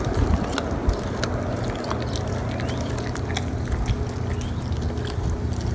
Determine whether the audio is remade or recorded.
recorded